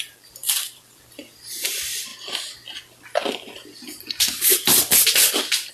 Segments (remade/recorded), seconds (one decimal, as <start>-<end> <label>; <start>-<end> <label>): 0.0-2.1 remade; 2.1-5.7 recorded

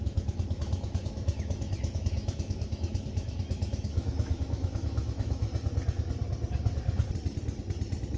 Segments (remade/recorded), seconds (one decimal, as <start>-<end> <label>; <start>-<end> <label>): 0.0-5.5 remade; 5.5-8.2 recorded

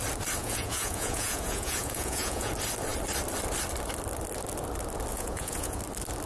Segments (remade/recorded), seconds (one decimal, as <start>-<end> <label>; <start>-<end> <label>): 0.0-0.4 recorded; 0.4-2.5 remade; 2.5-5.1 recorded; 5.1-5.8 remade; 5.8-6.3 recorded

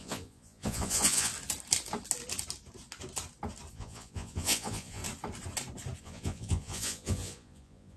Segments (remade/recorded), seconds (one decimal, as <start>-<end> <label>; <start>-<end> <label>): 0.0-1.3 remade; 1.3-3.7 recorded; 3.7-5.0 remade; 5.0-6.0 recorded; 6.0-8.0 remade

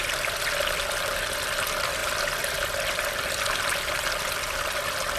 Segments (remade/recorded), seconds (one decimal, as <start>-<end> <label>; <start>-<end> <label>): 0.0-5.2 recorded

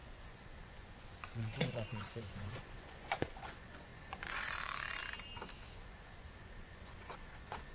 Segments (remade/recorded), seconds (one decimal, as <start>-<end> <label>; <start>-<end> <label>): 0.0-5.0 remade; 5.0-5.7 recorded; 5.7-7.7 remade

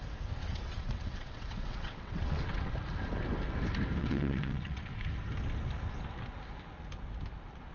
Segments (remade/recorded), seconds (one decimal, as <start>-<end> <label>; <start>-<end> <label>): 0.0-0.4 recorded; 0.4-2.7 remade; 2.7-4.0 recorded; 4.0-4.9 remade; 4.9-7.7 recorded

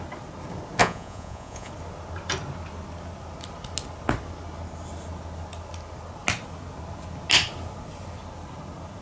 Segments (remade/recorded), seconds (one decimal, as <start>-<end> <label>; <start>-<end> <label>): 0.0-0.8 recorded; 0.8-1.7 remade; 1.7-9.0 recorded